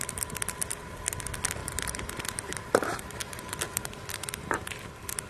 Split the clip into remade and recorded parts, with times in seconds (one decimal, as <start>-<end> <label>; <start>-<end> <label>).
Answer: 0.0-1.6 recorded; 1.6-3.2 remade; 3.2-5.3 recorded